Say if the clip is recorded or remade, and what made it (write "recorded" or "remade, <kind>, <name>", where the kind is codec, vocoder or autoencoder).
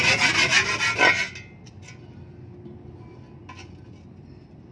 recorded